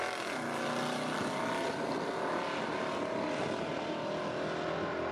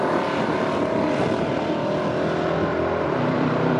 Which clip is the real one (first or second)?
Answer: first